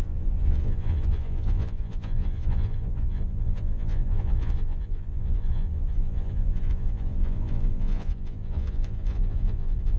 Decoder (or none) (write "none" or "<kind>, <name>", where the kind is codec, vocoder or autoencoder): vocoder, Vocos